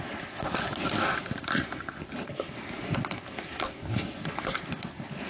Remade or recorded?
recorded